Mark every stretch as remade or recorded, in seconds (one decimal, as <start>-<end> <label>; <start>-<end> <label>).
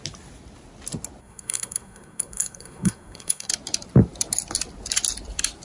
0.0-1.2 recorded; 1.2-3.5 remade; 3.5-5.6 recorded